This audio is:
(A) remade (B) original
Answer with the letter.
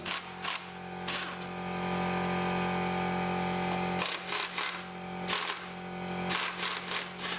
B